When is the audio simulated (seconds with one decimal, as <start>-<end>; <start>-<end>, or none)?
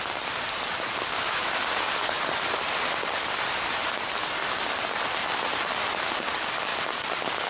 4.4-5.8; 6.7-7.5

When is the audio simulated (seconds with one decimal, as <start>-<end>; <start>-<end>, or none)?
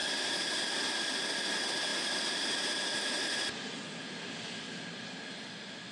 1.9-3.8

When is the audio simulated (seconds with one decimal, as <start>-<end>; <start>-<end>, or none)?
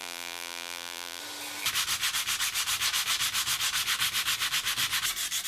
0.0-1.2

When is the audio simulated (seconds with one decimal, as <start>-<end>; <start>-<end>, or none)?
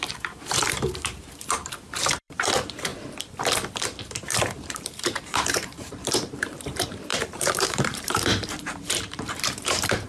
0.0-2.9; 4.0-10.1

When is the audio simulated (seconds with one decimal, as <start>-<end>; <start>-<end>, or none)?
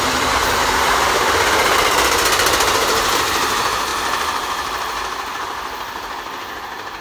3.9-7.0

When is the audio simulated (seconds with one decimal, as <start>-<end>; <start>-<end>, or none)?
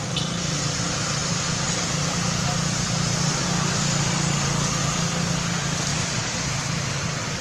5.9-6.4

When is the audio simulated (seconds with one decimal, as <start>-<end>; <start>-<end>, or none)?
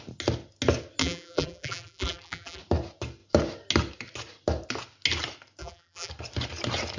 1.0-2.6; 5.6-6.1